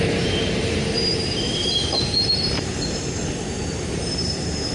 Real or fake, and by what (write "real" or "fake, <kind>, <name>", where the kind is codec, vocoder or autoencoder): fake, vocoder, BigVGAN v2